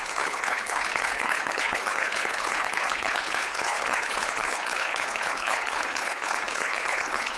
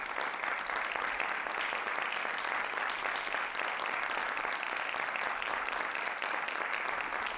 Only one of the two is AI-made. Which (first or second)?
first